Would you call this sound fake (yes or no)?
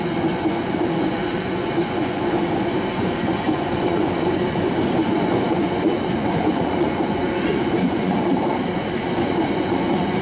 yes